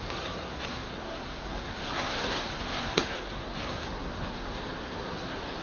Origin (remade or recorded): remade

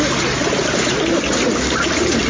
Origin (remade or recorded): recorded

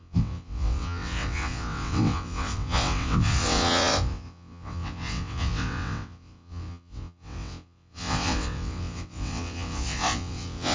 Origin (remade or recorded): remade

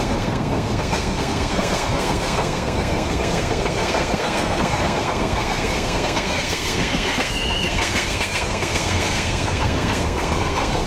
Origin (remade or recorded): remade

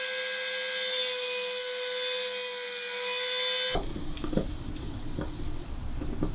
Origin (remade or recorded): recorded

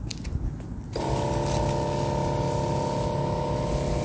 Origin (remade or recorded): recorded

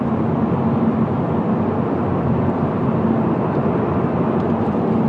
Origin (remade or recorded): recorded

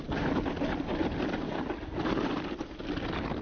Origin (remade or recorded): recorded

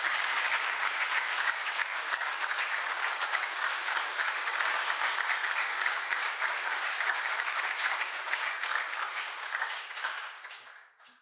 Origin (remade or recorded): remade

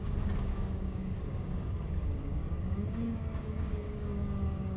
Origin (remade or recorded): remade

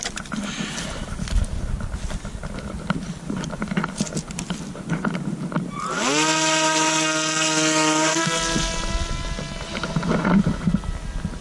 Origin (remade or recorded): recorded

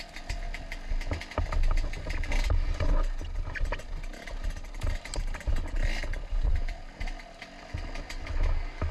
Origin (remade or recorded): recorded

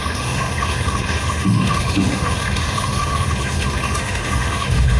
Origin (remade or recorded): remade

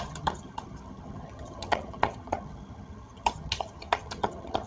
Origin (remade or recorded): remade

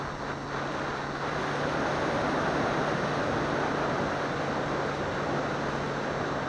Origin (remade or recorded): recorded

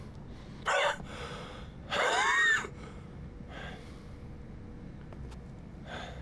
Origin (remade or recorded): recorded